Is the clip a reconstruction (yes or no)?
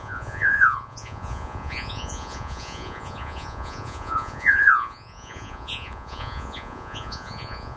yes